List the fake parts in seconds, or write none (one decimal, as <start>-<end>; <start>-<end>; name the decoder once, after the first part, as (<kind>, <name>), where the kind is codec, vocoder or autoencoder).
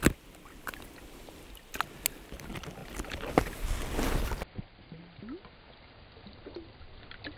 none